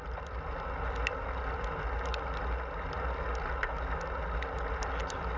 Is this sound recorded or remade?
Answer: recorded